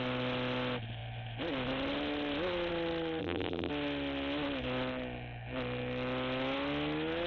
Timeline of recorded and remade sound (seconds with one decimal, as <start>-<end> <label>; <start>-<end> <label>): 0.0-3.2 recorded; 3.2-3.7 remade; 3.7-7.3 recorded